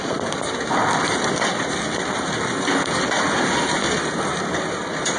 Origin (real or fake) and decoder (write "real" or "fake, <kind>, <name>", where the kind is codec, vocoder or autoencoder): real